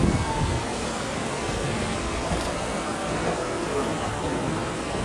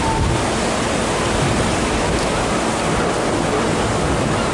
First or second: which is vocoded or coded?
first